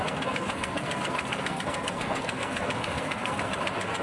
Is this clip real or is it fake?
fake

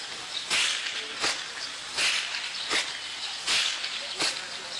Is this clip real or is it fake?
real